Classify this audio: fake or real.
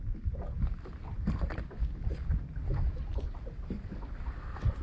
real